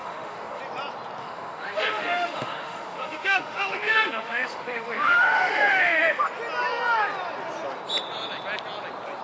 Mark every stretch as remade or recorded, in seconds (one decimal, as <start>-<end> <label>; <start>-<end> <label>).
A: 0.0-0.6 remade; 0.6-1.2 recorded; 1.2-6.2 remade; 6.2-9.2 recorded